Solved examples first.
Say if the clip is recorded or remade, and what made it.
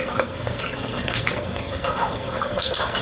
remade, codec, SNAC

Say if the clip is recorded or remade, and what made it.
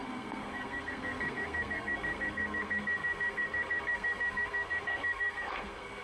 remade, codec, SNAC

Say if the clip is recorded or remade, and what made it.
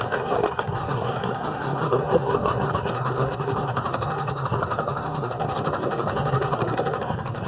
remade, codec, SNAC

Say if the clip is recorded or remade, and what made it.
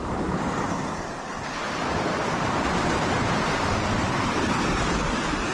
recorded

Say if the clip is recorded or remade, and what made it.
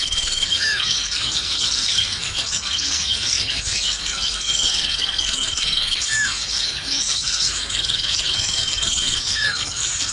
remade, codec, SNAC